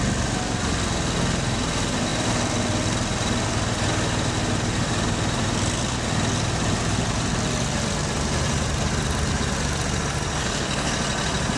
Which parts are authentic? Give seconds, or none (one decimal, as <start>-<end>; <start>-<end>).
0.0-10.4; 10.9-11.6